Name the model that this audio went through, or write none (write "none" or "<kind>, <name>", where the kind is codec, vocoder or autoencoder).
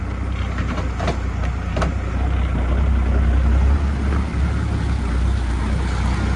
none